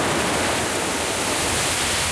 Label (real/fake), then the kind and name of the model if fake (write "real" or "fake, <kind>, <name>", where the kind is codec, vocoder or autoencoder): real